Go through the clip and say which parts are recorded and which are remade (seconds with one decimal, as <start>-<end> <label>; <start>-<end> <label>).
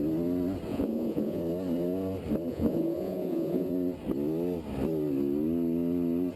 0.0-0.7 recorded; 0.7-1.4 remade; 1.4-2.5 recorded; 2.5-3.7 remade; 3.7-6.4 recorded